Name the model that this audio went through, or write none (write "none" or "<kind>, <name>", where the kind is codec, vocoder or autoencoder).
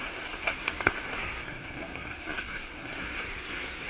codec, SNAC